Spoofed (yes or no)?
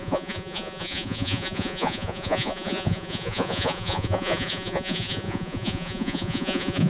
yes